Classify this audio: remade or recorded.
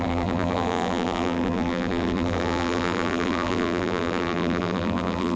remade